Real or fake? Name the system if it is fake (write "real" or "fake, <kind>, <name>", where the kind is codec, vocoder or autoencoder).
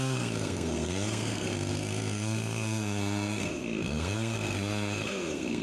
fake, codec, SNAC